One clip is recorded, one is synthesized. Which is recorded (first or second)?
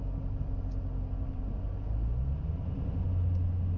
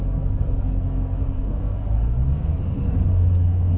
first